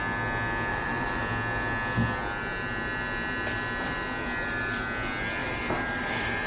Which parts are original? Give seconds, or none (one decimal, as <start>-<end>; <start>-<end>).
0.0-0.7; 1.2-5.4